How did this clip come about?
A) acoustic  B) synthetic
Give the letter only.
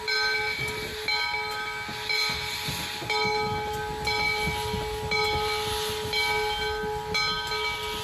A